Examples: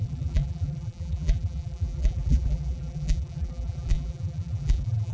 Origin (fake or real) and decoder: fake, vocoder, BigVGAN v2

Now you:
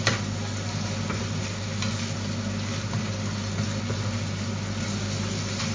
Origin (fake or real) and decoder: real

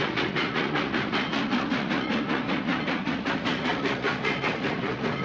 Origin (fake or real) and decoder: fake, vocoder, Vocos